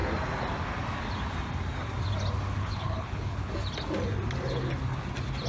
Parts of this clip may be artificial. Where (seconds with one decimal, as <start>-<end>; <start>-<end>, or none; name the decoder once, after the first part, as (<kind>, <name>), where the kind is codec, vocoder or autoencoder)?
2.6-3.5 (codec, HILCodec)